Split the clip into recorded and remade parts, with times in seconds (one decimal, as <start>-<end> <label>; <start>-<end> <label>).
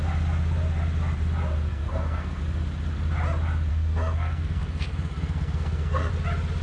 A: 0.0-1.7 recorded; 1.7-2.4 remade; 2.4-3.7 recorded; 3.7-6.1 remade; 6.1-6.6 recorded